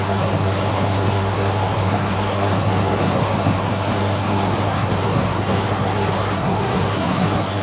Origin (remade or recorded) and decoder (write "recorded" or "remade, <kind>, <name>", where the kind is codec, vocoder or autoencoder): remade, codec, SNAC